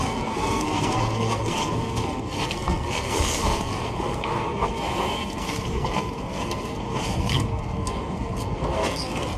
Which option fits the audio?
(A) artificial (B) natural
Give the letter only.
A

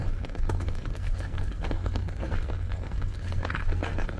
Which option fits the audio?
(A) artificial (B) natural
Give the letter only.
A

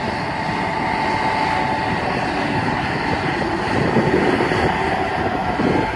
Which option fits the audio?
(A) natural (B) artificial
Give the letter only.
A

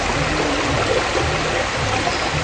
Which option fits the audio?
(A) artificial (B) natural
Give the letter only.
B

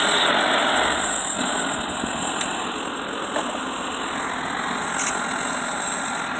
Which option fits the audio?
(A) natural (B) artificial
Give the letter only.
A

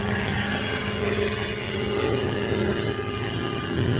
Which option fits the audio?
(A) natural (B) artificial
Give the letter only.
B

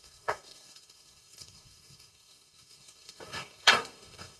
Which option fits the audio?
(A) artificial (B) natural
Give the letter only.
A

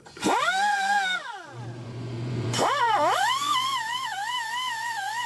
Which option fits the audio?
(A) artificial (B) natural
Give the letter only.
A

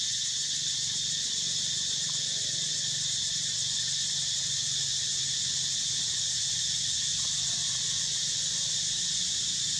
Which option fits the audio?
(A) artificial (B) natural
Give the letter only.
B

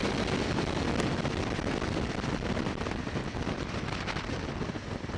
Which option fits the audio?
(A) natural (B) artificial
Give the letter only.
A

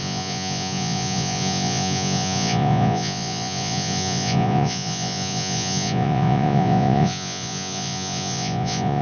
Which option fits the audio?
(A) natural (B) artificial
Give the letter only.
B